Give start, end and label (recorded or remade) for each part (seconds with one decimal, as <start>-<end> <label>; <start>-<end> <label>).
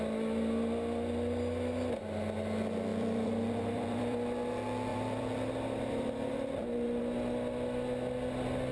0.0-2.9 recorded; 2.9-4.5 remade; 4.5-4.9 recorded; 4.9-7.0 remade; 7.0-8.7 recorded